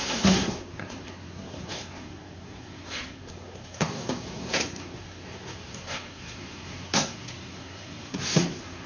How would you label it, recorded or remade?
remade